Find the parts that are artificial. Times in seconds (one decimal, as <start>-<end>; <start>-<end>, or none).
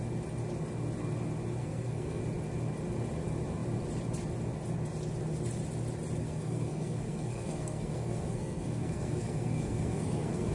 1.6-2.2; 6.2-10.5